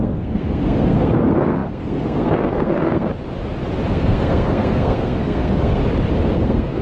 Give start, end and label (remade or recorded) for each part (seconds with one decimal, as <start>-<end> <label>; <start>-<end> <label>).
0.0-3.1 remade; 3.1-3.9 recorded; 3.9-5.8 remade; 5.8-6.3 recorded; 6.3-6.8 remade